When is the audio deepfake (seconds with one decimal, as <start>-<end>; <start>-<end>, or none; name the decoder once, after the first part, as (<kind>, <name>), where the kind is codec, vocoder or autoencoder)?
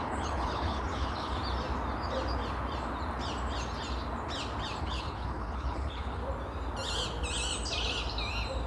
0.0-1.4 (codec, HILCodec); 4.8-6.2